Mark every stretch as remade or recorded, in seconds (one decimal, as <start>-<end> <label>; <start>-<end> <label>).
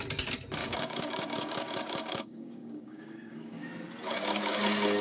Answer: 0.0-0.6 recorded; 0.6-3.6 remade; 3.6-4.1 recorded; 4.1-4.6 remade; 4.6-5.0 recorded